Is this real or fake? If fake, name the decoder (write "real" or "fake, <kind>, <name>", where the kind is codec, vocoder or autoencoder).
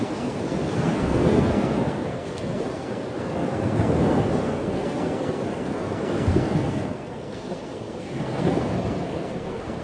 fake, codec, SNAC